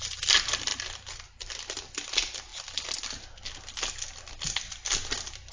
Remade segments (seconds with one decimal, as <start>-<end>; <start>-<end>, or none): none